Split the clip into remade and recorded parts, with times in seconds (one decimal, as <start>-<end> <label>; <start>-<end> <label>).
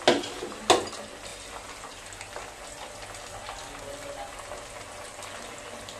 0.0-6.0 recorded